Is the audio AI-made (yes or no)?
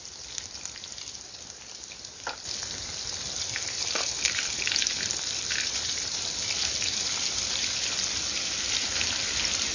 yes